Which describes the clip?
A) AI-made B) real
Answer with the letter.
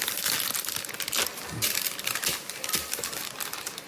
B